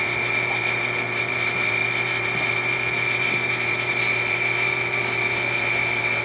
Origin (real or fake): fake